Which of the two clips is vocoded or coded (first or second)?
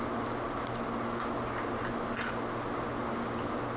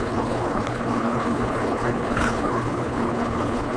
second